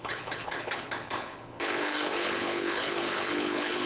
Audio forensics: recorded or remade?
remade